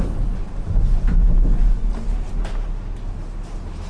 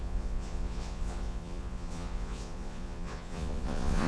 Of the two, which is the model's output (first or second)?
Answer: second